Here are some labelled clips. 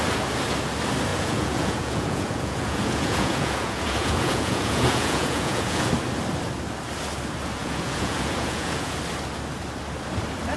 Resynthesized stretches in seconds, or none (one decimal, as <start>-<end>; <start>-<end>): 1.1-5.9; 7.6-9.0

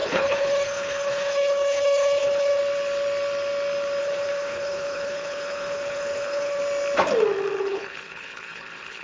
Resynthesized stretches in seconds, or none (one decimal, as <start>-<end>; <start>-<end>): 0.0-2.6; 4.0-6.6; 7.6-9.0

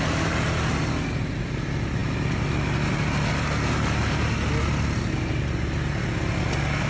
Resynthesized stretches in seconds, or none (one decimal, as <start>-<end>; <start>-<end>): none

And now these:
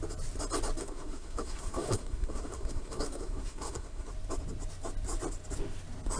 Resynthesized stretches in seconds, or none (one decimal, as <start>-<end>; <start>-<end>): 0.8-4.1

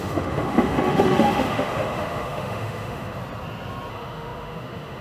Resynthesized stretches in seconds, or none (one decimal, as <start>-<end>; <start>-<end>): 0.0-3.2; 3.9-5.0